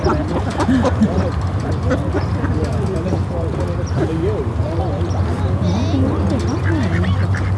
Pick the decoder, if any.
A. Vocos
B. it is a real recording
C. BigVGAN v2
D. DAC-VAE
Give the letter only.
B